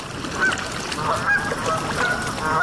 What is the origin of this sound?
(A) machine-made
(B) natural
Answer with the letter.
B